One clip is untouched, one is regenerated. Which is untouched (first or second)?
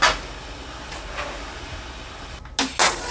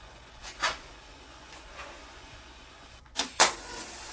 first